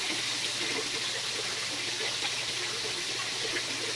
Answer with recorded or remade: recorded